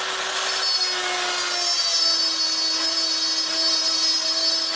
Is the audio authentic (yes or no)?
yes